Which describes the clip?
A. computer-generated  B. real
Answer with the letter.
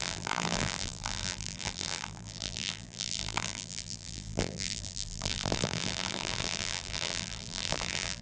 A